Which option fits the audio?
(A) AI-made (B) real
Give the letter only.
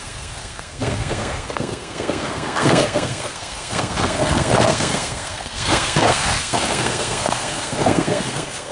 A